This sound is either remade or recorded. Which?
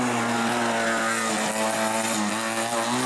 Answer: recorded